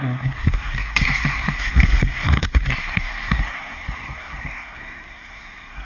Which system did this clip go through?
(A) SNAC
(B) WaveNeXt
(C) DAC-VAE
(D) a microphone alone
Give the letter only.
A